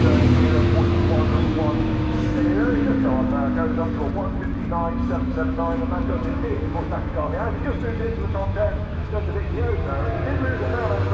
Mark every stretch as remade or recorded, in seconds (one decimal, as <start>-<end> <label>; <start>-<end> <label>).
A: 0.0-1.3 recorded; 1.3-2.9 remade; 2.9-4.8 recorded; 4.8-7.5 remade; 7.5-8.4 recorded; 8.4-9.2 remade; 9.2-11.1 recorded